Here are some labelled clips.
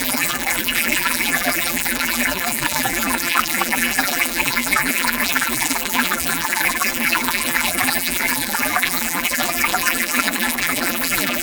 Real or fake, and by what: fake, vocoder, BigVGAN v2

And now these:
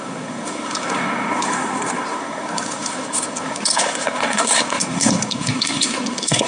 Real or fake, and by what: fake, codec, SNAC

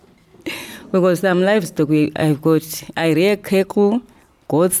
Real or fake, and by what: real